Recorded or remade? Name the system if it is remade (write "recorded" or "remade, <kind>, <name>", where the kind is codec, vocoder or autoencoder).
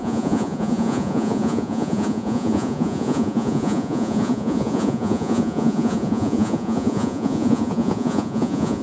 remade, vocoder, Vocos